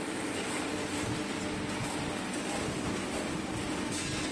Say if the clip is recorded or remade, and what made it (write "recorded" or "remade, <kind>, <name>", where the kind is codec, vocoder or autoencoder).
recorded